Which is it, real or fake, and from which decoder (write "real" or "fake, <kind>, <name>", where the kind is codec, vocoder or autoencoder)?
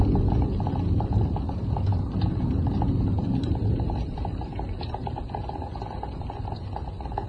fake, vocoder, BigVGAN v2